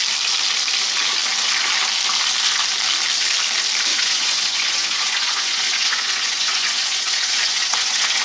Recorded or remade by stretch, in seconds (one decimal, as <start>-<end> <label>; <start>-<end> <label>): 0.0-3.9 recorded; 3.9-8.2 remade